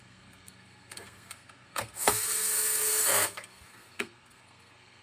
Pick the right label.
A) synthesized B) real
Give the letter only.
A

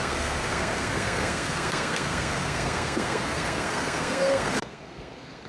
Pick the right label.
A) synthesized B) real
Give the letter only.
A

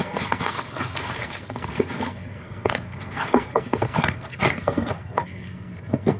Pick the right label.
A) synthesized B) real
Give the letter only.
A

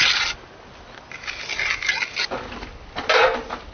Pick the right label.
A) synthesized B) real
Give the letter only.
B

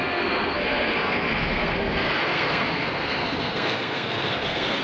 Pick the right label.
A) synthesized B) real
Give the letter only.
A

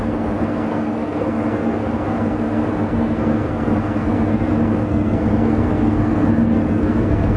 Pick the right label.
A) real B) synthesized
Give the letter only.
B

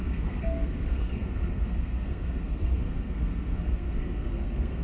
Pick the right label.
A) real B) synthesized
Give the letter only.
B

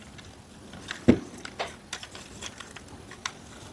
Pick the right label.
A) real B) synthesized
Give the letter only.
A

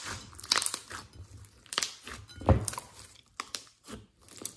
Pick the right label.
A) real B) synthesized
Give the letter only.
A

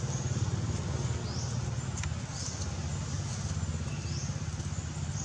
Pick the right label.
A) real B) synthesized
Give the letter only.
A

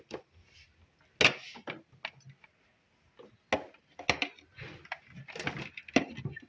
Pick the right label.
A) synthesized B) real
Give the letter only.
B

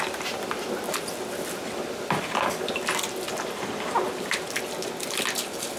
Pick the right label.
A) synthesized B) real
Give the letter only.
B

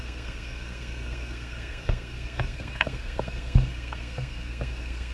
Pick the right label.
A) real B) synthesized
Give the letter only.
B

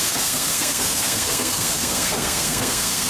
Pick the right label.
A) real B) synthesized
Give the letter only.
B